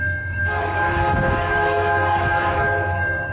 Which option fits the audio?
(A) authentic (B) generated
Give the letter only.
B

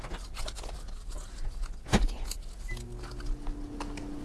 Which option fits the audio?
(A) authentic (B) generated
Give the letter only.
A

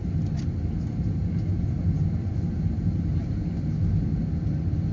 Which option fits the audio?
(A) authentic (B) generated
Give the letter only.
A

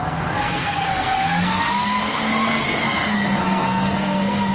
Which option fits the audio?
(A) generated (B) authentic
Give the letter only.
A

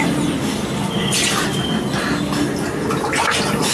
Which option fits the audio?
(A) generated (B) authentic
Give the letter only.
B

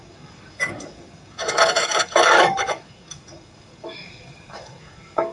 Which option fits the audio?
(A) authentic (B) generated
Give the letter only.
B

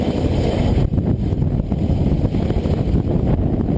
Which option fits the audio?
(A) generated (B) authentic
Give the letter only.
B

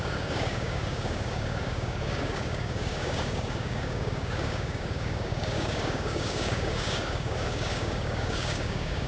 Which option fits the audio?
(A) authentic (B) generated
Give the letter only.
B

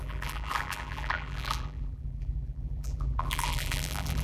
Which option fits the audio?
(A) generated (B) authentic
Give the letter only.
A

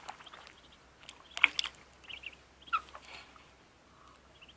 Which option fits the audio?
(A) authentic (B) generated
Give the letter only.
A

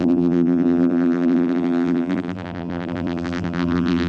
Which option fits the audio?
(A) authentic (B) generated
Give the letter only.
B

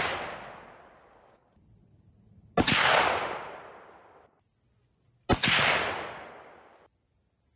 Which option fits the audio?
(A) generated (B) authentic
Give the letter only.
B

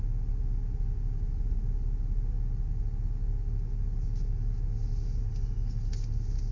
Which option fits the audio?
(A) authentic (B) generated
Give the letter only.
A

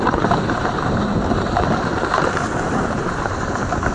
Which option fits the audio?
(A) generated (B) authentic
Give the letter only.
A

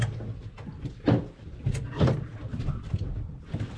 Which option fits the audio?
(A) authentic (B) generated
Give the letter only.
A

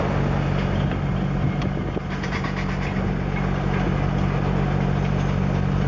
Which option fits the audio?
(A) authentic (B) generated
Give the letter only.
A